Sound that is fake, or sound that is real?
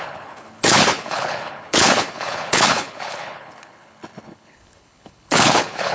fake